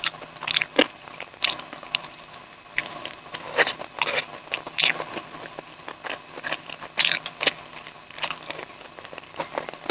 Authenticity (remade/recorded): recorded